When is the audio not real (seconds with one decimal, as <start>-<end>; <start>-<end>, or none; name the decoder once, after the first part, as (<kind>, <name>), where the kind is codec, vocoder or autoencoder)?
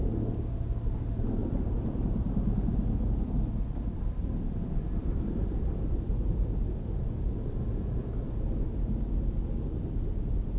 1.4-6.0 (vocoder, BigVGAN v2)